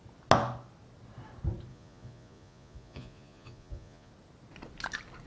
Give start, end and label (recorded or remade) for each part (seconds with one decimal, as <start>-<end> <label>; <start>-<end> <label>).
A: 0.0-1.7 recorded; 1.7-4.1 remade; 4.1-5.3 recorded